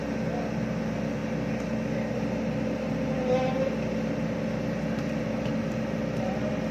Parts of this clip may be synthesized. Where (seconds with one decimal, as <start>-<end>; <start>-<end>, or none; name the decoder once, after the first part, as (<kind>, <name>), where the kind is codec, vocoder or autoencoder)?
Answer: none